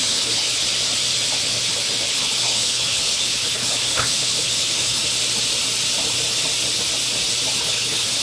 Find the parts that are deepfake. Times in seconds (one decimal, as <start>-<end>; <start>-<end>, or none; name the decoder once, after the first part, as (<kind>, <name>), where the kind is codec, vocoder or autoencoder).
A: 0.0-0.6 (codec, HILCodec); 2.1-5.0; 7.6-8.2